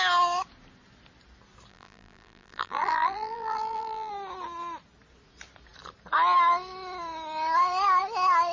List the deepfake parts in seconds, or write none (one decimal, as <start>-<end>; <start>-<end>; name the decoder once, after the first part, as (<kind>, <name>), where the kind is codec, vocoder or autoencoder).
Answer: 1.7-4.1 (vocoder, BigVGAN v2)